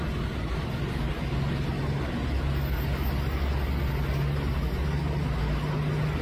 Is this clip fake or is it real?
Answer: real